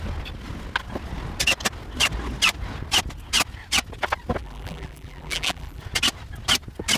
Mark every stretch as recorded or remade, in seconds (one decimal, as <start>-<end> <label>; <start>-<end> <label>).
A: 0.0-4.4 recorded; 4.4-5.8 remade; 5.8-7.0 recorded